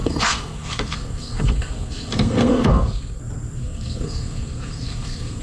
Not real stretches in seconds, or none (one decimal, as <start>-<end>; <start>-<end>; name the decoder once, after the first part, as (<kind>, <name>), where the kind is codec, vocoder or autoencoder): 0.0-3.2 (codec, SNAC); 3.6-5.4